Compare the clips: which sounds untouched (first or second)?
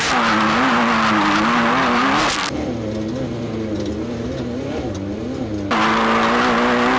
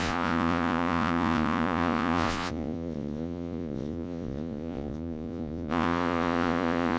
first